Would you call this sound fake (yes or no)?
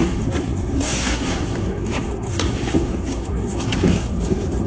yes